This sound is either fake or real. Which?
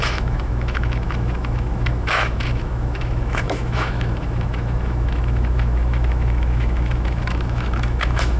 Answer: fake